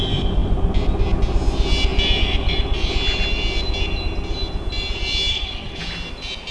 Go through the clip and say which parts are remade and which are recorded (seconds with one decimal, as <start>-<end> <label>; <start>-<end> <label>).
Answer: 0.0-5.3 recorded; 5.3-5.8 remade; 5.8-6.5 recorded